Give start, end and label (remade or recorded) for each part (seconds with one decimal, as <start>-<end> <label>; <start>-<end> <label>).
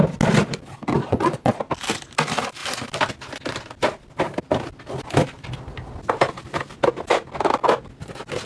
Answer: 0.0-1.0 recorded; 1.0-1.6 remade; 1.6-8.5 recorded